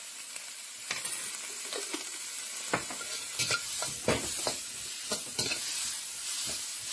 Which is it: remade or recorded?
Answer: recorded